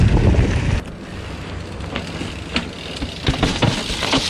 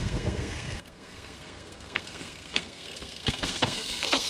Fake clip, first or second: second